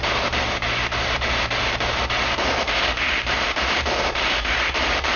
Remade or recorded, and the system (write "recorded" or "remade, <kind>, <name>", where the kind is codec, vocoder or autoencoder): remade, vocoder, BigVGAN v2